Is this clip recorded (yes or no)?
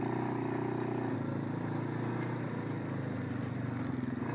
yes